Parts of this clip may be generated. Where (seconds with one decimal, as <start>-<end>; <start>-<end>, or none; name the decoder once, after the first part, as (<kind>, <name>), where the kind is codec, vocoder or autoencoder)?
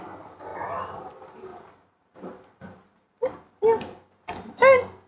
1.5-4.5 (vocoder, BigVGAN v2)